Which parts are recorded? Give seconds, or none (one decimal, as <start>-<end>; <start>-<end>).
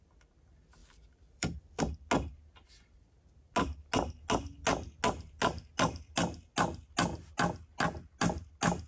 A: 0.0-0.8; 1.8-8.9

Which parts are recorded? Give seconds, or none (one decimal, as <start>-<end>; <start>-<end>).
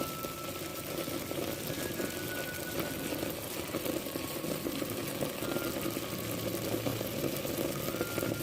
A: 0.0-8.4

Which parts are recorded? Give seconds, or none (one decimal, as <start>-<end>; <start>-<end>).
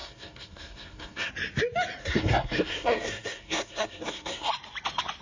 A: 1.3-2.0; 4.5-5.2